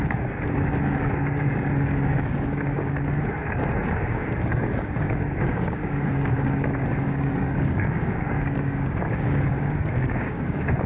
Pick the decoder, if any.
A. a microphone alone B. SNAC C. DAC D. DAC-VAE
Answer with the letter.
C